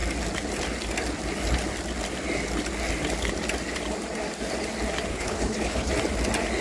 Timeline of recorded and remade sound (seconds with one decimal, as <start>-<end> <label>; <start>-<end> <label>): 0.0-5.1 recorded; 5.1-5.9 remade; 5.9-6.6 recorded